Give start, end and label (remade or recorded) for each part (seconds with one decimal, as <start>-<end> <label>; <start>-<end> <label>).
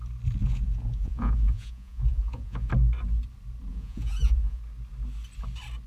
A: 0.0-0.4 recorded; 0.4-2.7 remade; 2.7-3.7 recorded; 3.7-4.6 remade; 4.6-5.9 recorded